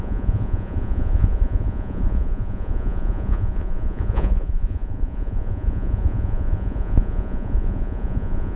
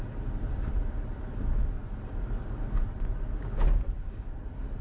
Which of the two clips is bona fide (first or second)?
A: second